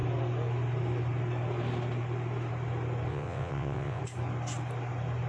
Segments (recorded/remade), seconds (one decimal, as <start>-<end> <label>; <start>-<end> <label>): 0.0-3.1 recorded; 3.1-4.0 remade; 4.0-5.3 recorded